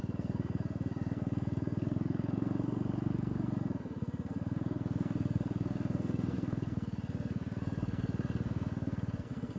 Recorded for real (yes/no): no